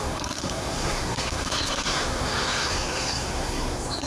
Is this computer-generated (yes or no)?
yes